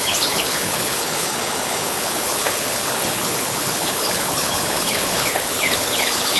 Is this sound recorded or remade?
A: remade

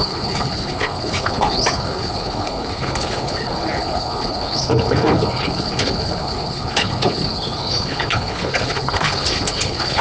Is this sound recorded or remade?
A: remade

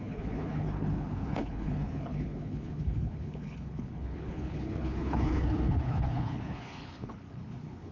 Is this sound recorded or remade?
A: remade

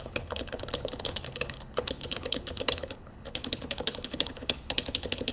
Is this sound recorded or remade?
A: remade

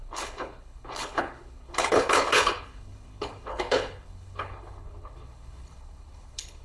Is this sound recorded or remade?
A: remade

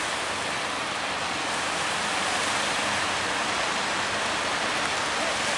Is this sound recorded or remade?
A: recorded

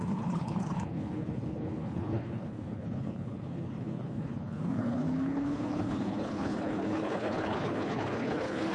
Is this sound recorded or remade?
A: remade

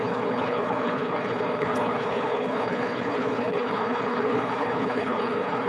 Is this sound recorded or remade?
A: remade